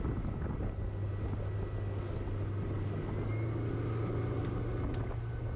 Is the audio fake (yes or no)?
no